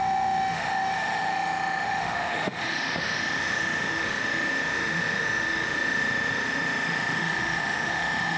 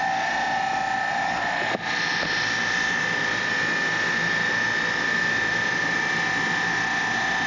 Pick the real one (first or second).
second